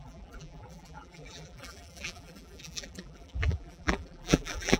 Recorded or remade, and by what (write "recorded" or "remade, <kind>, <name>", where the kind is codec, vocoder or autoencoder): remade, vocoder, BigVGAN v2